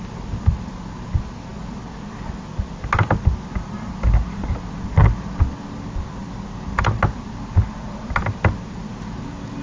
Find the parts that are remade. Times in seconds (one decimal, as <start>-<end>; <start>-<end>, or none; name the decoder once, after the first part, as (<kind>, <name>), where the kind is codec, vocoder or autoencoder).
none